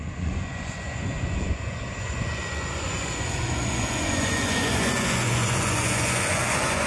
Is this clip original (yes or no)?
no